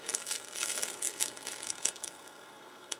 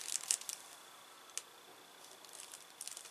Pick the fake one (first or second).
first